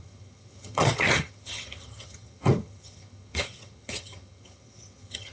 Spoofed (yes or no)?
yes